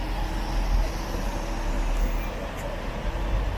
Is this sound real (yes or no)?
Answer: yes